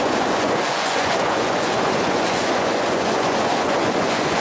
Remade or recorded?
remade